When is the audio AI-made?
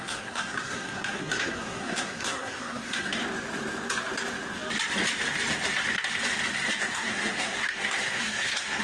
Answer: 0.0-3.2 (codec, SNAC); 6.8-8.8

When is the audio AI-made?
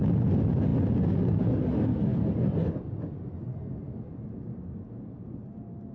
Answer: none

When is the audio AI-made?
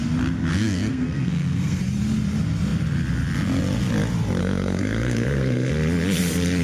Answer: 0.5-1.8 (codec, SNAC); 4.4-5.7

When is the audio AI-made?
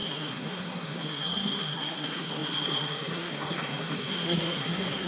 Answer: 0.0-5.1 (codec, SNAC)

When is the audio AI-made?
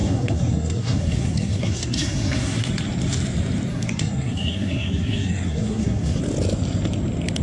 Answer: 0.0-2.7 (codec, SNAC); 3.7-6.2